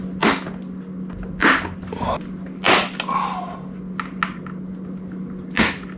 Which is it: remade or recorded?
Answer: recorded